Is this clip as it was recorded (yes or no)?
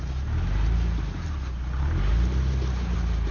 yes